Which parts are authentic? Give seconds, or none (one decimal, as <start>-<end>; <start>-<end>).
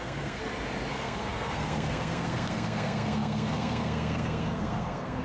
0.4-0.9